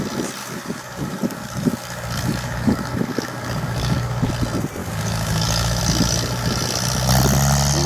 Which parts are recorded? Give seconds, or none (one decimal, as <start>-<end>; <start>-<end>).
0.0-0.4; 4.3-4.8; 5.8-7.9